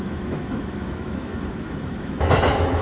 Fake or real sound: fake